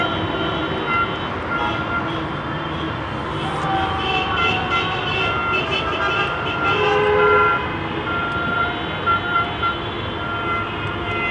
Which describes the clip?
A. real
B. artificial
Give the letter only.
A